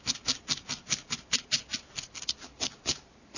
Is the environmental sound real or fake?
real